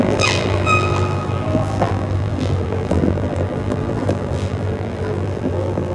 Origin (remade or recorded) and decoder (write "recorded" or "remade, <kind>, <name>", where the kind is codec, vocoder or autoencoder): remade, vocoder, BigVGAN v2